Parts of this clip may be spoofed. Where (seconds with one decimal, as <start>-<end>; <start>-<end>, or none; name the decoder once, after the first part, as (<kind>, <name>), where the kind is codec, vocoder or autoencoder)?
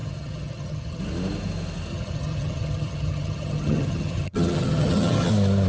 0.0-1.0 (vocoder, HiFi-GAN); 1.9-5.3